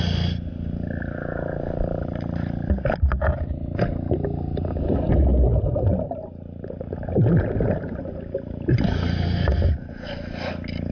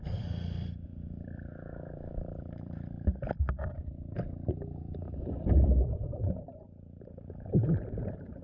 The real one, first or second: first